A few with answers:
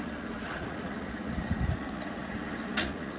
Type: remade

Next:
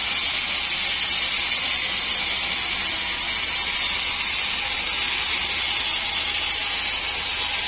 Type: recorded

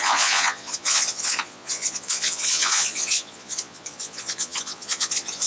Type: remade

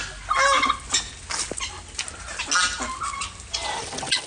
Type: recorded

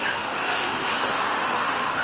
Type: remade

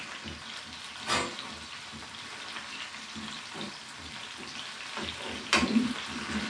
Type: recorded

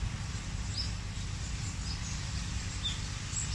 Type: recorded